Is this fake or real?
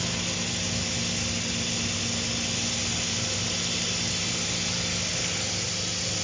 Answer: real